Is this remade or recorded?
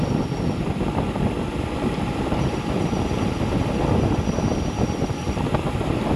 recorded